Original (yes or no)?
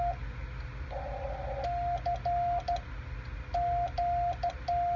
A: yes